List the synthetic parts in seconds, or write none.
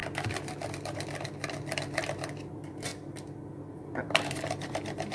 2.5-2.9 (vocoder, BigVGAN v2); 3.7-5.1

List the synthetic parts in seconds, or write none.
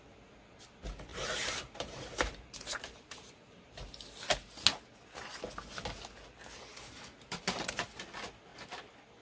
1.1-3.7 (vocoder, BigVGAN v2); 6.7-7.7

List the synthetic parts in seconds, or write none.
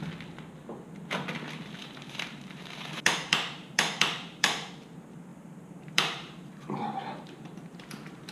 1.8-4.7 (vocoder, BigVGAN v2); 5.3-8.3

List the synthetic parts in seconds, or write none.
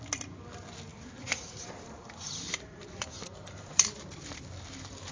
0.9-3.7 (vocoder, BigVGAN v2)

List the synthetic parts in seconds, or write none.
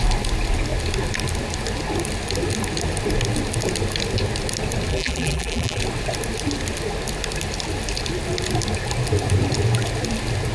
4.9-5.8 (vocoder, BigVGAN v2)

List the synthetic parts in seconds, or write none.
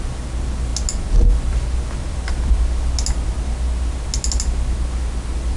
none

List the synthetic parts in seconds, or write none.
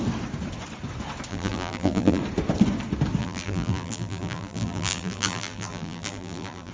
1.3-2.2 (vocoder, BigVGAN v2); 3.2-6.7